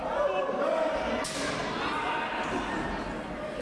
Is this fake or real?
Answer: real